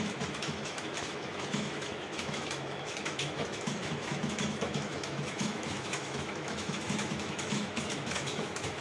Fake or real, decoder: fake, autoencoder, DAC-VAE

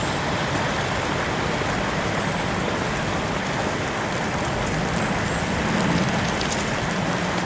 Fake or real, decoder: real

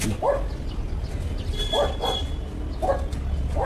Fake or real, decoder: real